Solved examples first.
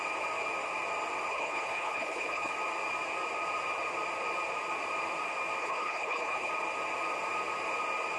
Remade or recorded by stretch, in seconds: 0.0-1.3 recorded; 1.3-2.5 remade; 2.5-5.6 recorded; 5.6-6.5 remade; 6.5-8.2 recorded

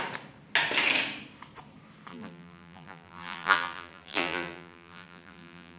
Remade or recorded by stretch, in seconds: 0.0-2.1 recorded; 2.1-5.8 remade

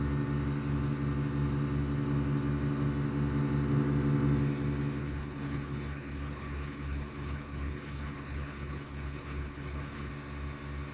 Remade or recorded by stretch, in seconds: 0.0-5.0 recorded; 5.0-10.1 remade; 10.1-10.9 recorded

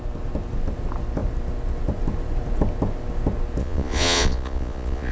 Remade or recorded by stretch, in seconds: 0.0-3.6 recorded; 3.6-5.1 remade

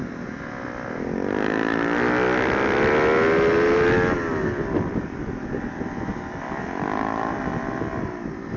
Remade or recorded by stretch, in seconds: 0.0-8.6 recorded

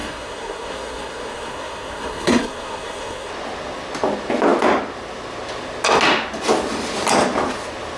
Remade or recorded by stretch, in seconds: 0.0-3.3 remade; 3.3-8.0 recorded